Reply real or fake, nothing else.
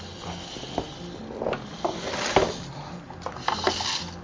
real